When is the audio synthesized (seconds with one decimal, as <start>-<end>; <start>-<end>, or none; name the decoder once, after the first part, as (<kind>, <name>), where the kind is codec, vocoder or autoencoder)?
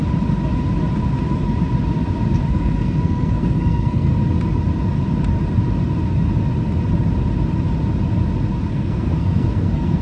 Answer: 2.5-4.1 (codec, SNAC); 8.7-10.0